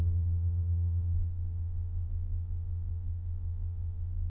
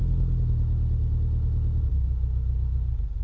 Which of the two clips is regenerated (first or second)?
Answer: first